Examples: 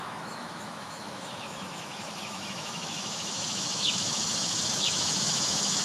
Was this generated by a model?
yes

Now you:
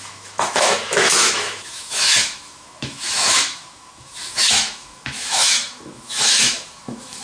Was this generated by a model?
yes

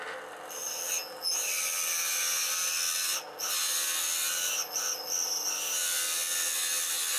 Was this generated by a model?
no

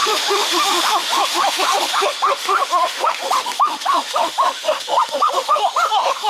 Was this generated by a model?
yes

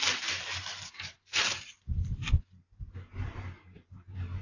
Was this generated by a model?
no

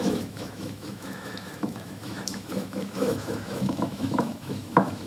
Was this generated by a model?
yes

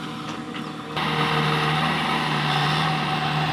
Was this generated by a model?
no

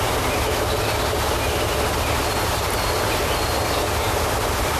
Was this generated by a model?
no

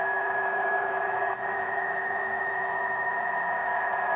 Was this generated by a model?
yes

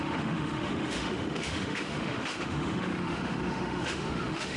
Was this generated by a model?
yes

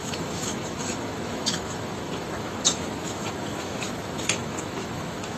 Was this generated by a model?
yes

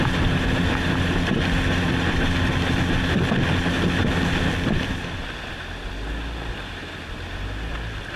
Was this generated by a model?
no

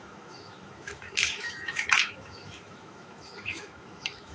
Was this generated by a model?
yes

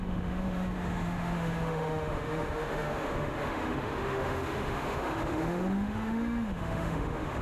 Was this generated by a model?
yes